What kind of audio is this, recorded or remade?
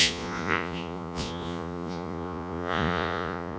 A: remade